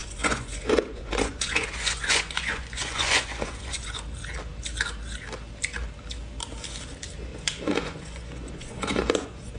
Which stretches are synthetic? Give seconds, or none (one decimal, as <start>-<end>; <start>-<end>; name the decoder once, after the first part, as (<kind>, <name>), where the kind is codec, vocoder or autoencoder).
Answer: 0.0-4.0 (vocoder, Vocos); 7.3-9.6